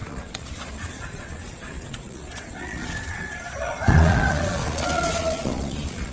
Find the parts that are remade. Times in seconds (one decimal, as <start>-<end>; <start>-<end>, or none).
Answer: 0.0-6.1